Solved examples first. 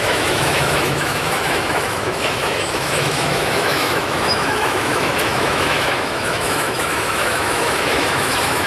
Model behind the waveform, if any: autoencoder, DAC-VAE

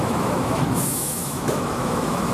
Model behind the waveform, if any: autoencoder, DAC-VAE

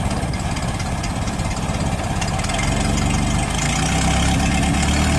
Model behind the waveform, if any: none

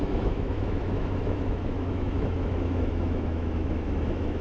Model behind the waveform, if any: autoencoder, DAC-VAE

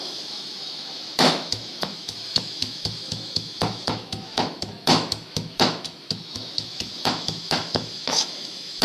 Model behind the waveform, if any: autoencoder, DAC-VAE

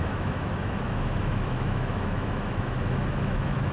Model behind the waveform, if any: autoencoder, DAC-VAE